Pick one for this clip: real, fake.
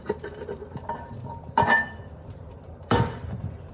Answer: fake